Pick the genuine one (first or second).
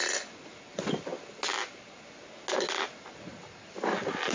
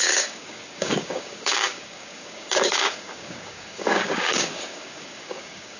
first